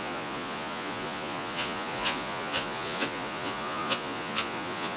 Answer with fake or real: fake